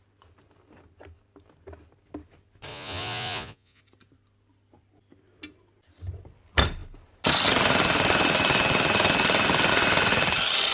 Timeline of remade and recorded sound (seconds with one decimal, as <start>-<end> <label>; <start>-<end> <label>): 0.0-2.7 recorded; 2.7-3.8 remade; 3.8-10.7 recorded